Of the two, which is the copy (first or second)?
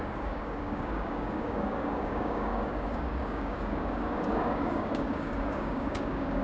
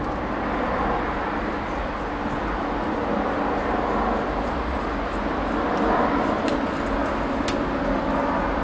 first